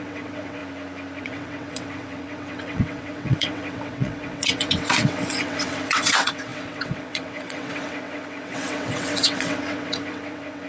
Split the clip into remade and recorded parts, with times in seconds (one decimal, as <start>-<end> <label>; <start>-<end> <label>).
0.0-0.6 remade; 0.6-1.2 recorded; 1.2-10.7 remade